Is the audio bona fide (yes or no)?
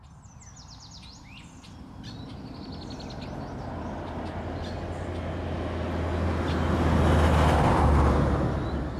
yes